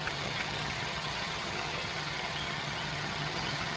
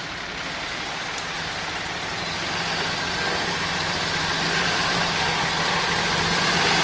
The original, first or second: second